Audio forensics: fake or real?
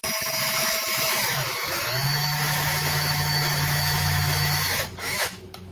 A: fake